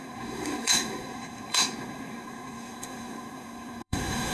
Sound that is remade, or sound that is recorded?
remade